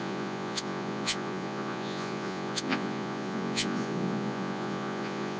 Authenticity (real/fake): fake